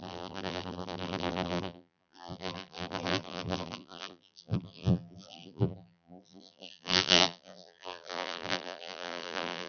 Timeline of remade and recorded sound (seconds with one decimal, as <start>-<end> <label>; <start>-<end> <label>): 0.0-9.7 remade